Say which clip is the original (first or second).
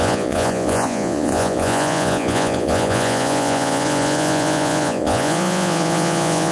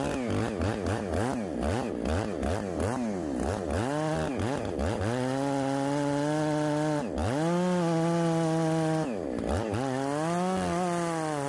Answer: second